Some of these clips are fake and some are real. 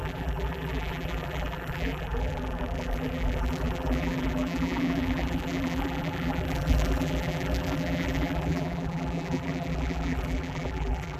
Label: fake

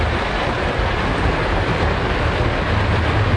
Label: real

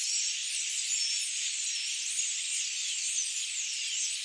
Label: fake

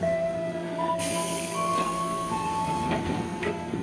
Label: fake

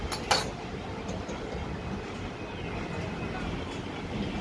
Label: real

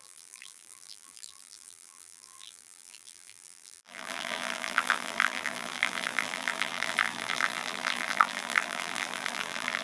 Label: fake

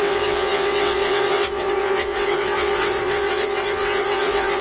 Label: fake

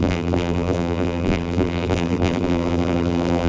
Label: fake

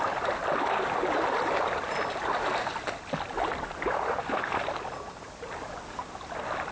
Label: real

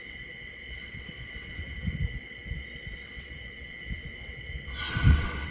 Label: fake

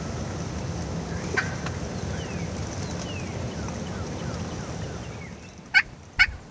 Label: real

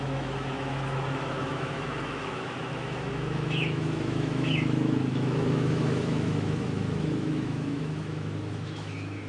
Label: fake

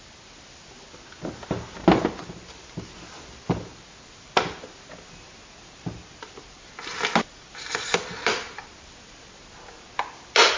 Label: real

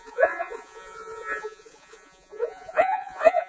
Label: fake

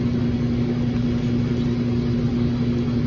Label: real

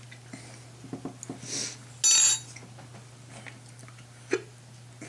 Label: real